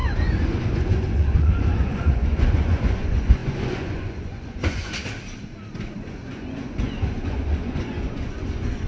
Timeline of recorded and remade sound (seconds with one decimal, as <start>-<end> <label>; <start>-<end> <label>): 0.0-5.0 remade; 5.0-5.7 recorded; 5.7-8.9 remade